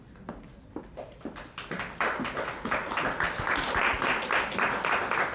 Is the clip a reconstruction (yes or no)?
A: no